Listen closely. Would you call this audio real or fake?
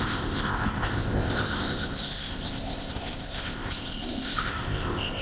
fake